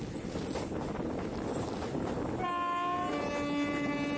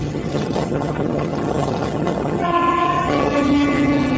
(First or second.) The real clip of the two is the first